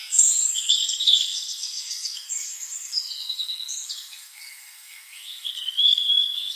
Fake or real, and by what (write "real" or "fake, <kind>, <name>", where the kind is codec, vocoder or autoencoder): fake, codec, SNAC